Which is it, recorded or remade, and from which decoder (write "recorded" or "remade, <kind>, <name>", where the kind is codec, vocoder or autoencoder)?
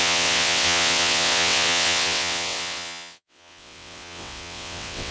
remade, vocoder, WaveNeXt